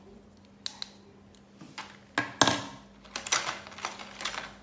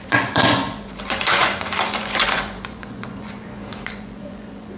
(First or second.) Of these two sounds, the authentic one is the first